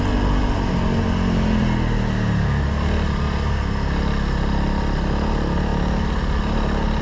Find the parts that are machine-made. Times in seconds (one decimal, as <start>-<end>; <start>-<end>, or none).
none

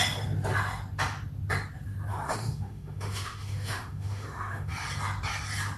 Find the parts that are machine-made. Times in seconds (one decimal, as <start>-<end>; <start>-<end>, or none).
2.1-4.7

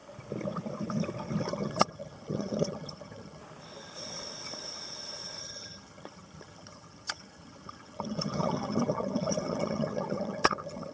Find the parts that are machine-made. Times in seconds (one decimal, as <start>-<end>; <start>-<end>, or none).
1.4-3.4; 5.4-10.9

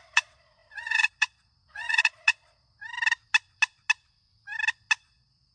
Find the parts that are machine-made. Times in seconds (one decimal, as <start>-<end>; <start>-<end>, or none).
0.0-2.8; 5.0-5.5

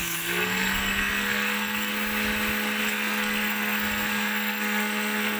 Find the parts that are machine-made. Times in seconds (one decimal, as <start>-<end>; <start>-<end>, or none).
0.0-1.9; 2.8-5.4

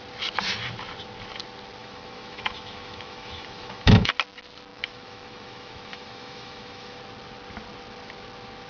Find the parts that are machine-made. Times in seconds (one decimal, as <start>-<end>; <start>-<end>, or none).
1.8-4.1; 4.7-7.0